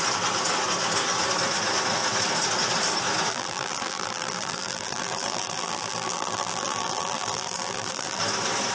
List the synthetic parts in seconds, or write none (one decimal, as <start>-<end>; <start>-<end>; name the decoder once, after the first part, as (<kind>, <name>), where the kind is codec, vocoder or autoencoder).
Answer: 3.3-8.2 (vocoder, BigVGAN v2)